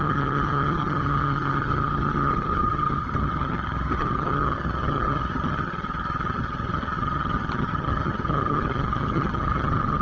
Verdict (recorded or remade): remade